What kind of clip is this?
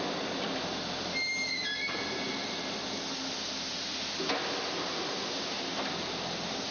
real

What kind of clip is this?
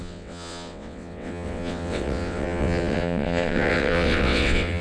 fake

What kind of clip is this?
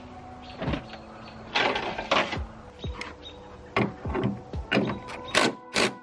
real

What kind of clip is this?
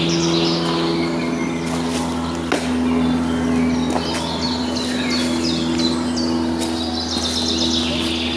real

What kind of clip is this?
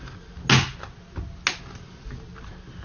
real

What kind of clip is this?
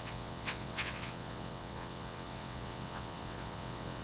fake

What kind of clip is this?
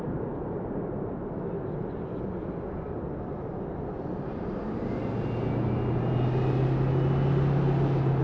real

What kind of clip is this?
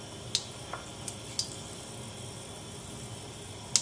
real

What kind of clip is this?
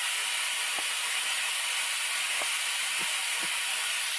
real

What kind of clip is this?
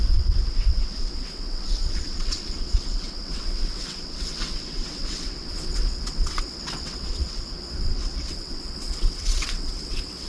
fake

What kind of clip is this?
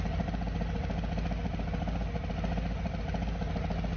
real